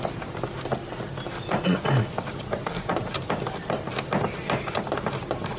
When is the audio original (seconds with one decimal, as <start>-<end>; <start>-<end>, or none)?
0.0-5.6